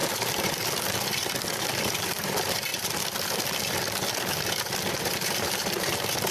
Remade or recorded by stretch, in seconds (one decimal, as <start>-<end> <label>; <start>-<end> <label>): 0.0-1.8 recorded; 1.8-2.7 remade; 2.7-4.9 recorded; 4.9-6.3 remade